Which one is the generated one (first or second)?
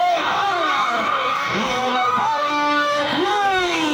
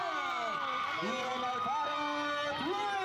first